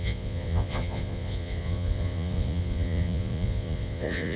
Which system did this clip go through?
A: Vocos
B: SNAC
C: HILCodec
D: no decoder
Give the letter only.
A